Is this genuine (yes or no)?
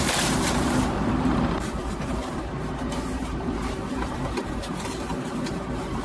no